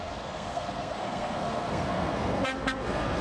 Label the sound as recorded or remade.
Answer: remade